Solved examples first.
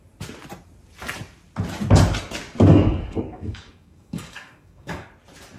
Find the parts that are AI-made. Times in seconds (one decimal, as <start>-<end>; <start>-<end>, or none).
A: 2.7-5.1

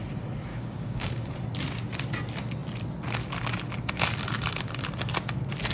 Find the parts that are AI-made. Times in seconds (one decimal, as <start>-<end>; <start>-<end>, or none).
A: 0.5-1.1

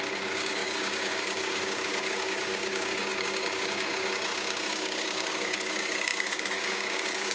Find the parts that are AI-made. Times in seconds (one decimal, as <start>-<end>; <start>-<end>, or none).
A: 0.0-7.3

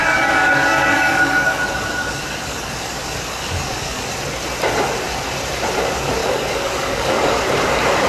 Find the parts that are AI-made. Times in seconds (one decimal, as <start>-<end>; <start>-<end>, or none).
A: 0.0-4.1; 6.2-7.4

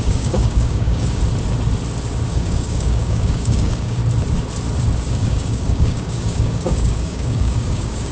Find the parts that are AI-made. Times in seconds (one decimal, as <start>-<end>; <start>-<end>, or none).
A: 0.0-1.2; 2.3-4.0; 5.1-8.1

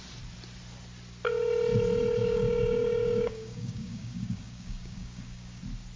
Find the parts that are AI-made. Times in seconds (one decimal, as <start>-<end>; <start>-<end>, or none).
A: 2.2-5.6

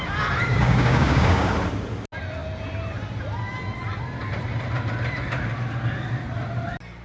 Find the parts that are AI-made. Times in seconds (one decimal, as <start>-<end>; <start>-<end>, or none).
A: 0.5-1.5

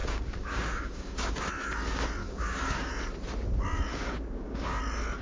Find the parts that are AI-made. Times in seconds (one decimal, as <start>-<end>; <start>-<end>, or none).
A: 0.0-1.4; 2.2-2.9; 3.9-4.8